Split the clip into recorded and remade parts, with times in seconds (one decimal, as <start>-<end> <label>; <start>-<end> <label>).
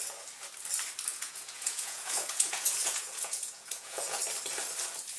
0.0-1.1 recorded; 1.1-4.2 remade; 4.2-5.2 recorded